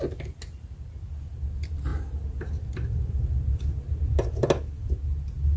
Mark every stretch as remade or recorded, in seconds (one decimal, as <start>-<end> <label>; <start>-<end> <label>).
0.0-5.6 recorded